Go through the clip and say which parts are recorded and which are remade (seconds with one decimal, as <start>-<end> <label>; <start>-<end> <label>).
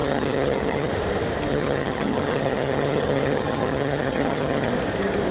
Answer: 0.0-0.9 remade; 0.9-1.5 recorded; 1.5-4.7 remade; 4.7-5.3 recorded